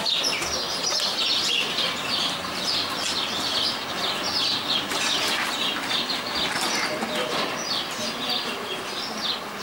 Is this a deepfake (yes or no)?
no